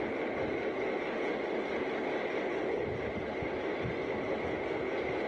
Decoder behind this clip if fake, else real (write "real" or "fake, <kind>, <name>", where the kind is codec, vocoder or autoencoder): real